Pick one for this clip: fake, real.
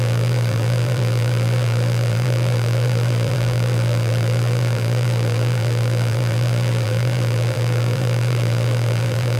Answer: fake